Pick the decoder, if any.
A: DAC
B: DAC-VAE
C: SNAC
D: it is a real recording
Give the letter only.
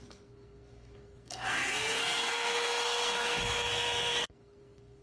C